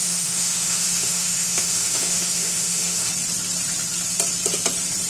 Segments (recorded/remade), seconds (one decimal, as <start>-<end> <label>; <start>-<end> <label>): 0.0-3.1 remade; 3.1-5.1 recorded